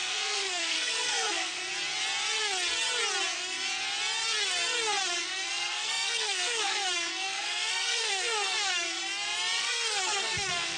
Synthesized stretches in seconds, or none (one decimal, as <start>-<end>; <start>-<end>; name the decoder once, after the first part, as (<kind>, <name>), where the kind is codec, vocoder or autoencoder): 0.0-1.6 (codec, SNAC); 5.2-9.0; 9.6-10.8